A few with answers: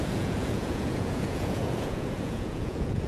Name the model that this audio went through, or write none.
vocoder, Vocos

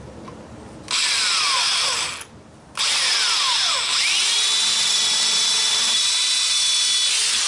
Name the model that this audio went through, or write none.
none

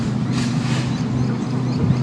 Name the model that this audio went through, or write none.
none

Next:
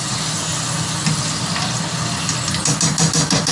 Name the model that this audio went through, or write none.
none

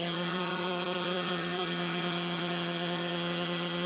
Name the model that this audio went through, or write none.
vocoder, HiFi-GAN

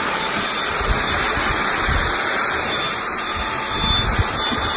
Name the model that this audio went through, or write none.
none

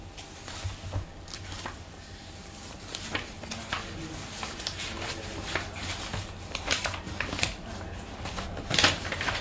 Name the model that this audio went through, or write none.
none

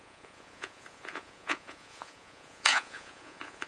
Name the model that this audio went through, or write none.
vocoder, Vocos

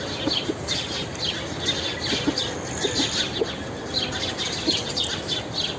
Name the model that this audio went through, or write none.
none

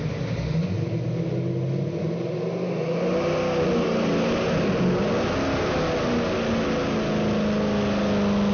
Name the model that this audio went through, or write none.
none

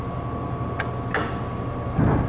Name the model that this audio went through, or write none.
none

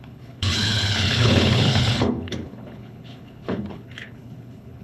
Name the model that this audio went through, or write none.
codec, HILCodec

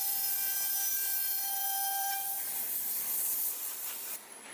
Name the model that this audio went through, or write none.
vocoder, BigVGAN v2